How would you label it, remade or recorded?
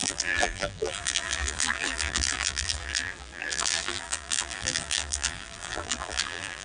remade